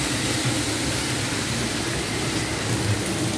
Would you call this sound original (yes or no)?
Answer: yes